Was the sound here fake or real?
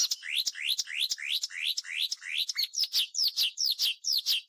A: real